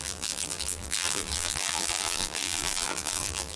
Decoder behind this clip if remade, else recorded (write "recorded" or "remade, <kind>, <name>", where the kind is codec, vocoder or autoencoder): remade, vocoder, BigVGAN v2